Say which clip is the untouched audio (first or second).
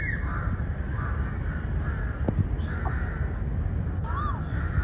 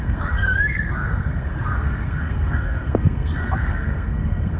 first